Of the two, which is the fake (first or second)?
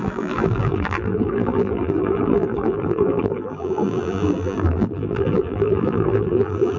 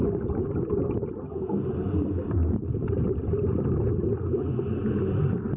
first